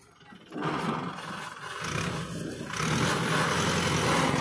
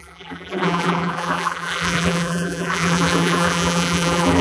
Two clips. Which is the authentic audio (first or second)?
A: first